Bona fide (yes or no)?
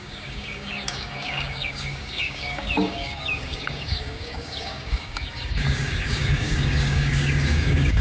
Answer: no